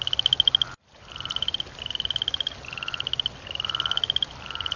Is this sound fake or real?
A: real